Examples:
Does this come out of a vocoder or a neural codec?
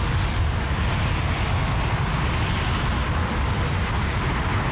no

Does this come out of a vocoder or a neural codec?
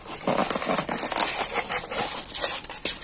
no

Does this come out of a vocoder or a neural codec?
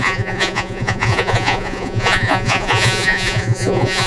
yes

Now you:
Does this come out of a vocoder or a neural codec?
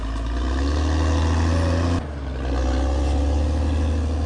no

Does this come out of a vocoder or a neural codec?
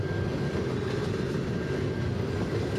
no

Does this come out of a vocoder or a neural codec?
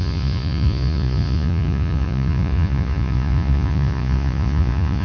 yes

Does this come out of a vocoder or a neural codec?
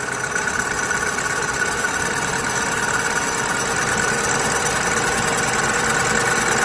no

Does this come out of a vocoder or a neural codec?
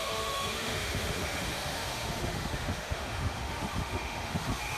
yes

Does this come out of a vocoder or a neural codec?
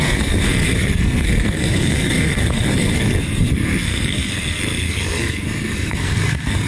yes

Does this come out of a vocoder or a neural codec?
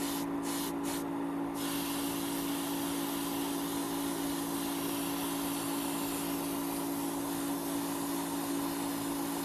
no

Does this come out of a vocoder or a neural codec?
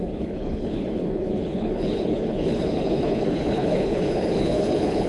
yes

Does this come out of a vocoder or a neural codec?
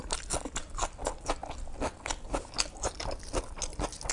no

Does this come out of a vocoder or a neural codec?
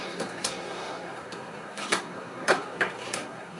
yes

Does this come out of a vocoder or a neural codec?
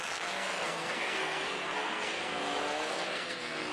yes